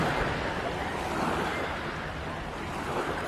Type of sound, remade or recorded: recorded